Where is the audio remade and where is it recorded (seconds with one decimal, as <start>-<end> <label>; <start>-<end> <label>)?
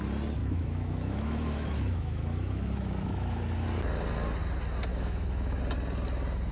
0.0-0.4 recorded; 0.4-3.4 remade; 3.4-4.9 recorded; 4.9-5.6 remade; 5.6-6.5 recorded